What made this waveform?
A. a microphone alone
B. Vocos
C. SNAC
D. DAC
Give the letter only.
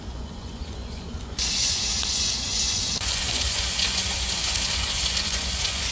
B